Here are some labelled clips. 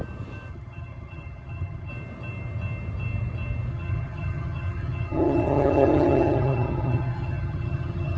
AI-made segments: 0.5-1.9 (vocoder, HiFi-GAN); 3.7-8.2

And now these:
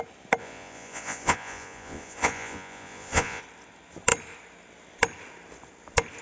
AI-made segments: 0.4-3.4 (vocoder, Vocos)

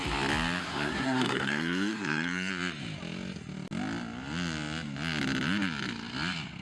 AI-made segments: 0.6-2.5 (codec, SNAC)

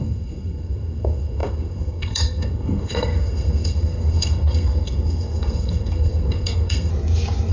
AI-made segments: 0.0-6.9 (codec, SNAC)